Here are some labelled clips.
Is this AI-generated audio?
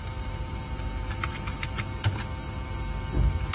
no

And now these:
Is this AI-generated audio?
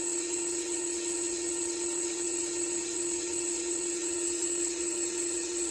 yes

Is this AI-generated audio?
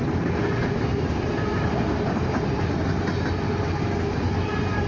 no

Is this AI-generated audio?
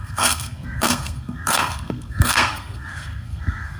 yes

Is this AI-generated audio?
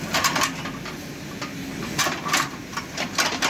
no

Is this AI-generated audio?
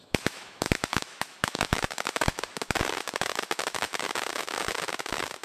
yes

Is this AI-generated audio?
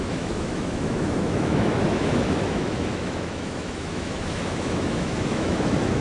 yes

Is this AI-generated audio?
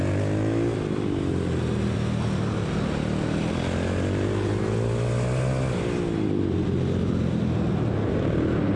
no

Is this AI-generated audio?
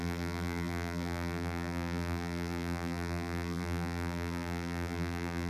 yes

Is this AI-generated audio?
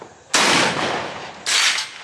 no